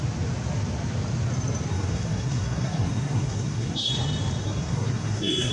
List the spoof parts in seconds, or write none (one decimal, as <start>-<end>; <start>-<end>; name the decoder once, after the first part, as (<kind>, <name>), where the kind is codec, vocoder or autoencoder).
1.7-3.9 (codec, SNAC); 4.4-5.5